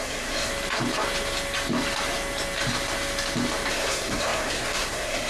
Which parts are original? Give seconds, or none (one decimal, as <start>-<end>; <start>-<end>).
0.5-3.7